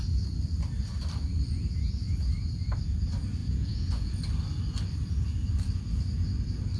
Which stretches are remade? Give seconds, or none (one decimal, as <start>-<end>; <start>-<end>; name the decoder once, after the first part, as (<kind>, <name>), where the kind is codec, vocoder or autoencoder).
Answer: 3.4-4.1 (vocoder, Vocos)